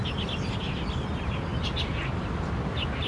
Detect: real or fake real